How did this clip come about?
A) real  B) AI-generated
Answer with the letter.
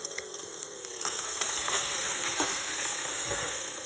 B